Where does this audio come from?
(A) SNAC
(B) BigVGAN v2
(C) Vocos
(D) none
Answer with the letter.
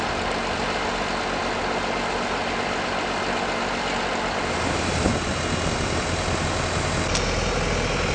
D